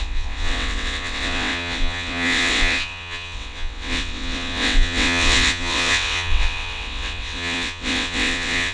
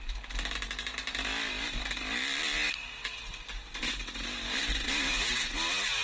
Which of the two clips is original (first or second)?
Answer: second